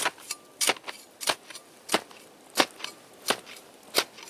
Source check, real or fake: real